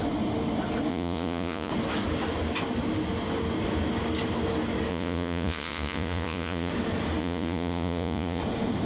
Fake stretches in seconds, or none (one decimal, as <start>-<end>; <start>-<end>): 0.9-1.7; 4.9-6.7; 7.2-8.4